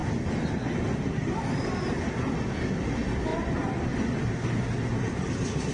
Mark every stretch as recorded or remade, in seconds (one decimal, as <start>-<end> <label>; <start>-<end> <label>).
0.0-5.7 recorded